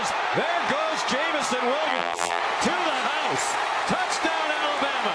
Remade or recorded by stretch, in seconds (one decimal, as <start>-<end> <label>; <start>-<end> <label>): 0.0-1.9 recorded; 1.9-2.4 remade; 2.4-5.1 recorded